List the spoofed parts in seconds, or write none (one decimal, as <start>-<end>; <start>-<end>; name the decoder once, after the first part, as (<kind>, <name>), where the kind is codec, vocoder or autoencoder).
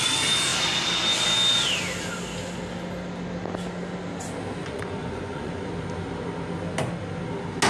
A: 4.6-5.7 (vocoder, Vocos)